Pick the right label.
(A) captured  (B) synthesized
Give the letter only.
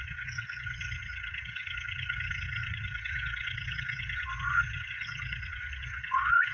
B